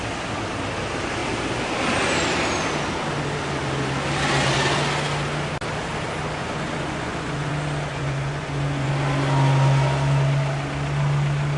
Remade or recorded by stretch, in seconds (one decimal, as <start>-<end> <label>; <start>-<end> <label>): 0.0-6.4 recorded; 6.4-7.5 remade; 7.5-7.9 recorded; 7.9-8.9 remade; 8.9-11.6 recorded